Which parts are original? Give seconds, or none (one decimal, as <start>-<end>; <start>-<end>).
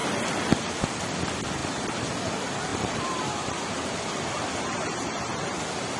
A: 0.6-6.0